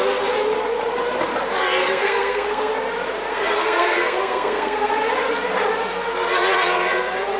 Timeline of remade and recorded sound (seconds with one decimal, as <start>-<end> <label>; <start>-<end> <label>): 0.0-1.8 recorded; 1.8-2.7 remade; 2.7-3.3 recorded; 3.3-4.9 remade; 4.9-7.4 recorded